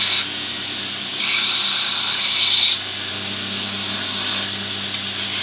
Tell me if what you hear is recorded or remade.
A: recorded